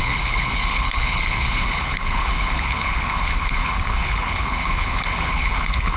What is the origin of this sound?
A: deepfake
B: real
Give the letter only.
A